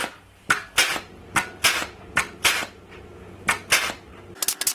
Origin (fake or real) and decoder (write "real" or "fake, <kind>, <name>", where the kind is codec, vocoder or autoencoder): real